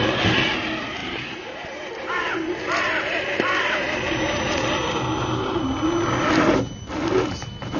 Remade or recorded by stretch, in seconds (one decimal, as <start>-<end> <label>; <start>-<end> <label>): 0.0-1.0 recorded; 1.0-2.3 remade; 2.3-7.8 recorded